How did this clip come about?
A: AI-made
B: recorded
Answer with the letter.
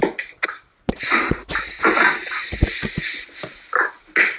B